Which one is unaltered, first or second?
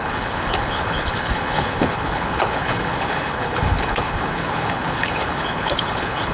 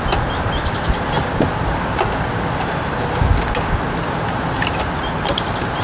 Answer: second